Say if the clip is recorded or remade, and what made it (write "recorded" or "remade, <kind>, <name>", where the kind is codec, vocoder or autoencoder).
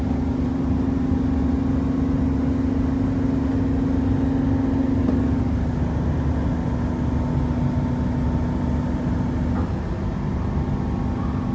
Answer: recorded